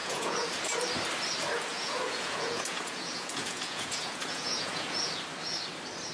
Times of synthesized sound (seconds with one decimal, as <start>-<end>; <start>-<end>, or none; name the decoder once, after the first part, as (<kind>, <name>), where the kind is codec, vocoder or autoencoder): 0.0-0.6 (vocoder, Vocos); 1.7-5.2